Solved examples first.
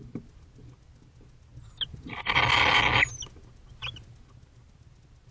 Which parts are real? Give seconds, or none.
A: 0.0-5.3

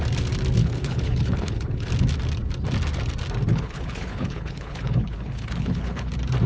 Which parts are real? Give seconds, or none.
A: 0.0-0.6; 1.9-3.5; 6.1-6.5

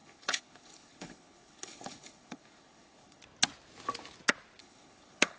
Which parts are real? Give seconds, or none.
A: 3.2-4.6

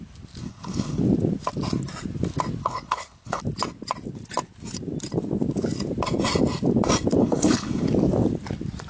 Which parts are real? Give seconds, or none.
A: 0.0-0.4; 1.0-2.6; 3.4-7.2; 7.9-8.9

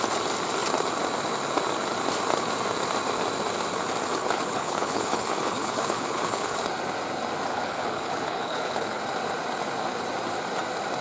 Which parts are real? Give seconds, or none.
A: 0.0-4.2; 6.6-7.5; 9.0-11.0

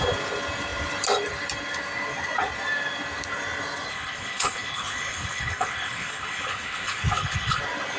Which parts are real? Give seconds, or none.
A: 0.0-3.9; 7.6-8.0

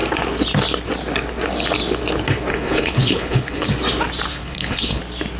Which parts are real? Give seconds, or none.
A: 0.0-2.5; 3.7-4.3; 5.0-5.4

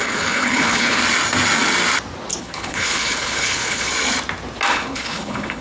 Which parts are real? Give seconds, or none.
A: 1.0-2.4; 3.9-4.7